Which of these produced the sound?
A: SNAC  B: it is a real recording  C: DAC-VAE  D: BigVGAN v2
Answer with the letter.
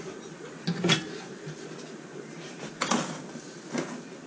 B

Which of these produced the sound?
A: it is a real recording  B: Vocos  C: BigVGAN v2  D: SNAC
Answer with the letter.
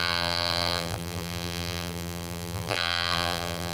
C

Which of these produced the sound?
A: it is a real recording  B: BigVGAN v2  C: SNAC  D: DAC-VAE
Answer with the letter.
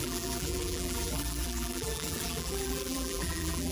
B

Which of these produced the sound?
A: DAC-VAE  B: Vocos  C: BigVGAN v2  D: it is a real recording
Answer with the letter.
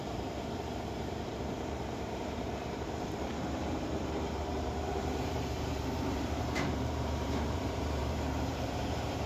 C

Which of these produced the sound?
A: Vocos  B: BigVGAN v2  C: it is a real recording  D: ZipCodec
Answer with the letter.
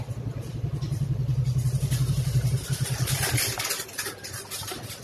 B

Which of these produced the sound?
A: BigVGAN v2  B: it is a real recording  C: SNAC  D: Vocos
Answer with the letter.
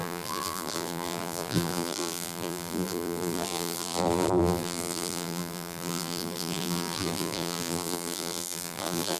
A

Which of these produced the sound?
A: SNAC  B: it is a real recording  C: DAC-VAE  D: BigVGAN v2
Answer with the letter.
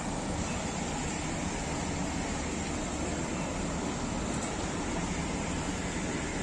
B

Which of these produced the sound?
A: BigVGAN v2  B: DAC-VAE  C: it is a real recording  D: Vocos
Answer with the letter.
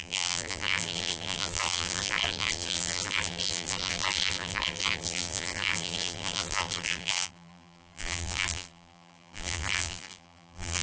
A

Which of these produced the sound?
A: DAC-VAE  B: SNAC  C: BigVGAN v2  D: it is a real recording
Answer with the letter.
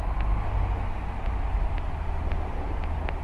D